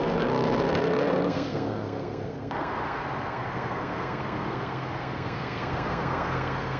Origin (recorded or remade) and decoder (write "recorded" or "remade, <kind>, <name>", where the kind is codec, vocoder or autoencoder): remade, codec, SNAC